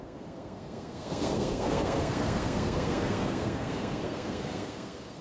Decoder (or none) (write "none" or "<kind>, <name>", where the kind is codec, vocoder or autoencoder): codec, SNAC